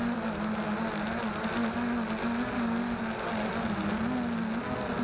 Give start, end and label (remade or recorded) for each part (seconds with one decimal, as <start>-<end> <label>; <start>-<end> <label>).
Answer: 0.0-5.0 recorded